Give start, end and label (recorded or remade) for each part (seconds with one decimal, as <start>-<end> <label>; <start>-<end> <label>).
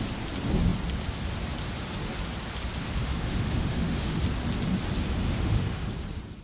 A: 0.0-3.0 recorded; 3.0-4.2 remade; 4.2-5.2 recorded; 5.2-5.9 remade; 5.9-6.4 recorded